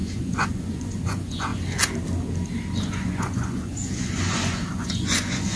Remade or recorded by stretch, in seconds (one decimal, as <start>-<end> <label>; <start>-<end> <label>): 0.0-1.5 remade; 1.5-2.8 recorded; 2.8-5.6 remade